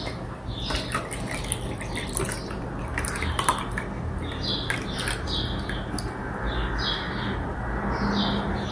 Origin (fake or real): real